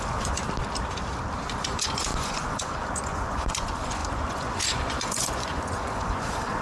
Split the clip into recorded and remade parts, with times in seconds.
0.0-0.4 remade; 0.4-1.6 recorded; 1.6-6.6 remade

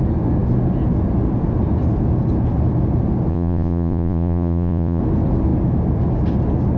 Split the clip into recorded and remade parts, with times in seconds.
0.0-3.3 recorded; 3.3-5.0 remade; 5.0-6.8 recorded

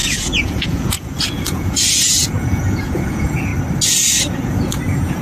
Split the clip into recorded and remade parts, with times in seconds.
0.0-3.5 remade; 3.5-4.3 recorded; 4.3-5.2 remade

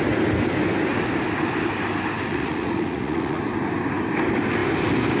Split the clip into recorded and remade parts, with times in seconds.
0.0-2.3 recorded; 2.3-3.4 remade; 3.4-5.2 recorded

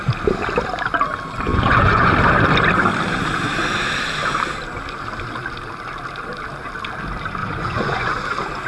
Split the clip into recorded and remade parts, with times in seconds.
0.0-1.5 recorded; 1.5-2.1 remade; 2.1-7.4 recorded; 7.4-8.1 remade; 8.1-8.7 recorded

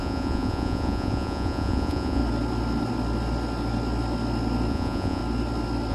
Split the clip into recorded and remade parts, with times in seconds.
0.0-2.2 remade; 2.2-4.7 recorded; 4.7-5.2 remade; 5.2-5.9 recorded

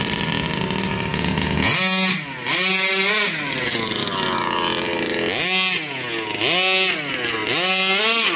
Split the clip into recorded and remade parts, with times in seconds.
0.0-1.1 recorded; 1.1-1.7 remade; 1.7-8.4 recorded